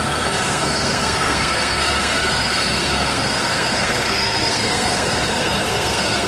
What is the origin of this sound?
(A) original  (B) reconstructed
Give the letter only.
B